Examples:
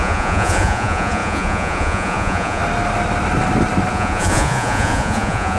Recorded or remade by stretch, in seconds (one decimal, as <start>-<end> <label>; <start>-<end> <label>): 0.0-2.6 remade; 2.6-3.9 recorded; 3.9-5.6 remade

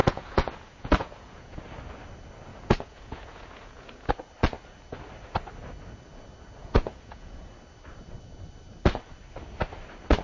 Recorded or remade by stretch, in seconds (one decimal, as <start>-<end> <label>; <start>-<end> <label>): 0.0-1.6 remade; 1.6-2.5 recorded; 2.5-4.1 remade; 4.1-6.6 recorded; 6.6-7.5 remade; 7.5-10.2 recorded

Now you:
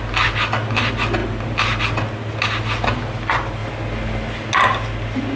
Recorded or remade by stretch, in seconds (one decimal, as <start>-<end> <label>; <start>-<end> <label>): 0.0-5.4 recorded

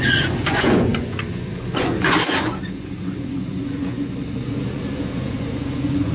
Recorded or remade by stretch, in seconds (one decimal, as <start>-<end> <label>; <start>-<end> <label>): 0.0-6.1 remade

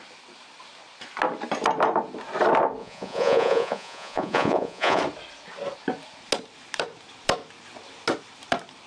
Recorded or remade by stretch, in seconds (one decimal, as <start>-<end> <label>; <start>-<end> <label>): 0.0-2.8 recorded; 2.8-5.0 remade; 5.0-8.9 recorded